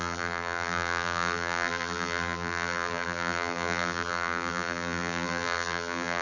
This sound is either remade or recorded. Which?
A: remade